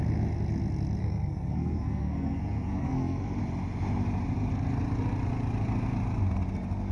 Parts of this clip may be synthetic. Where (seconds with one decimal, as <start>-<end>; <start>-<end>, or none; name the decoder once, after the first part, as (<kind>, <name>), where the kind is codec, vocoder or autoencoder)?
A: 1.0-3.4 (codec, SNAC)